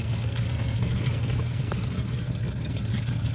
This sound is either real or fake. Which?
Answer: fake